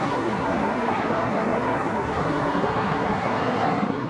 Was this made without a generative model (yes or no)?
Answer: no